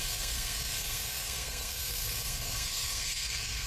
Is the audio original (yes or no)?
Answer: no